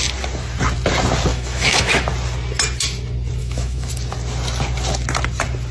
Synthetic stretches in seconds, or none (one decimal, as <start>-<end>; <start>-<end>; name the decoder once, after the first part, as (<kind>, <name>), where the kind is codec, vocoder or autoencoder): 1.3-2.0 (autoencoder, DAC-VAE); 3.4-3.9